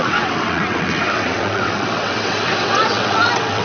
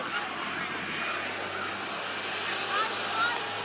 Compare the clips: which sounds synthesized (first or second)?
first